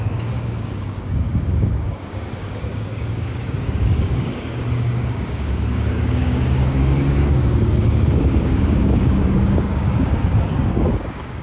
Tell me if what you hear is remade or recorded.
remade